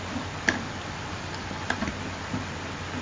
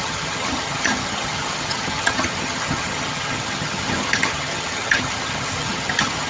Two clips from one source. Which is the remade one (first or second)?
second